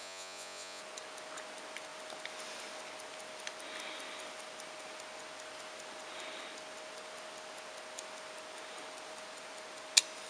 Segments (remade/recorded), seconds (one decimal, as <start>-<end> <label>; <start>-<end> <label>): 0.0-0.8 remade; 0.8-10.3 recorded